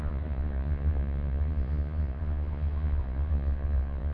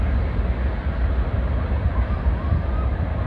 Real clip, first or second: second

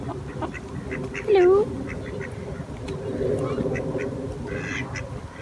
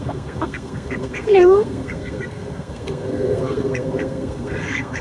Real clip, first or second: first